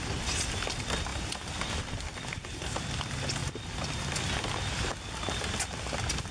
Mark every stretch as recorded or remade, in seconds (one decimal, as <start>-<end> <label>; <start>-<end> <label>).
0.0-6.3 recorded